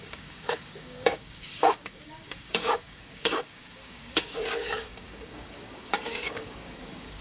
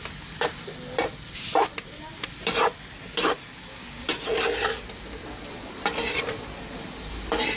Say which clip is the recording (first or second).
second